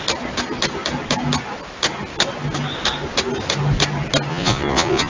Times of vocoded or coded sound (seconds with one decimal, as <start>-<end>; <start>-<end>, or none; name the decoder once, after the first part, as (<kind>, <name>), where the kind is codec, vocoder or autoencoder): 4.3-5.1 (vocoder, Vocos)